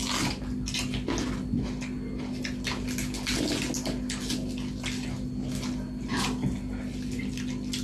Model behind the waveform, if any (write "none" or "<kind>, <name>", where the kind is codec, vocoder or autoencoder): none